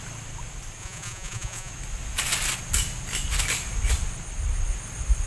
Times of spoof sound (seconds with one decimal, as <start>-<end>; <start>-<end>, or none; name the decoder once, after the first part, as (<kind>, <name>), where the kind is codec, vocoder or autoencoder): 0.8-1.7 (vocoder, Vocos)